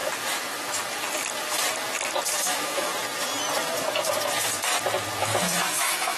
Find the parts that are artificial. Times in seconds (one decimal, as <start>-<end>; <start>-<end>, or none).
2.4-2.9; 5.2-6.2